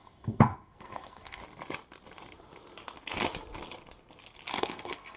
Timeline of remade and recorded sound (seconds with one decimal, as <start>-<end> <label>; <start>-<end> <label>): 0.0-1.4 remade; 1.4-4.5 recorded; 4.5-5.2 remade